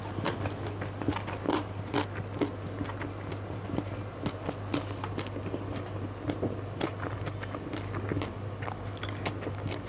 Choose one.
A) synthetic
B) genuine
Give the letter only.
B